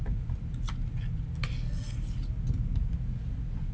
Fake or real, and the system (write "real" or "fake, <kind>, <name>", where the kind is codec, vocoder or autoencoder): real